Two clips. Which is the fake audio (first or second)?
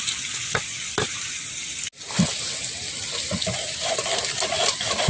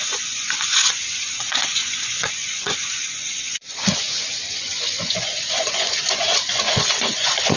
second